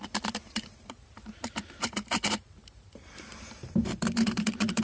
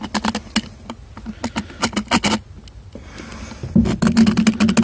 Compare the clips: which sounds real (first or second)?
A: second